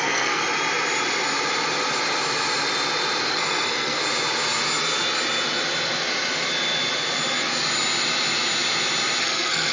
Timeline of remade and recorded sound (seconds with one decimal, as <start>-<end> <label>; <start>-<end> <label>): 0.0-0.4 remade; 0.4-3.3 recorded; 3.3-4.0 remade; 4.0-9.2 recorded; 9.2-9.7 remade